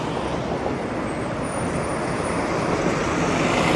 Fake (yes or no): no